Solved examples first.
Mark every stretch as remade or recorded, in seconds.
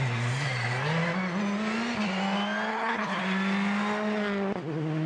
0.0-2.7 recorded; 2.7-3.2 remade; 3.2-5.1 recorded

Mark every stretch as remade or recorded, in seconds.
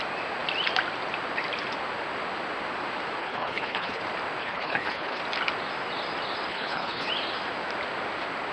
0.0-3.2 recorded; 3.2-4.0 remade; 4.0-4.4 recorded; 4.4-5.2 remade; 5.2-6.5 recorded; 6.5-7.1 remade; 7.1-8.5 recorded